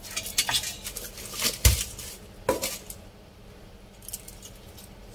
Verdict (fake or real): real